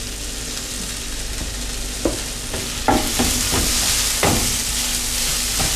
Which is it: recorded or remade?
recorded